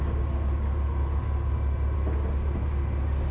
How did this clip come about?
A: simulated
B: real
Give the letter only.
B